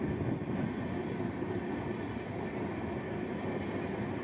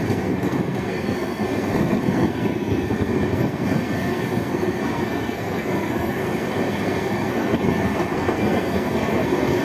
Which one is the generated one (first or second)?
second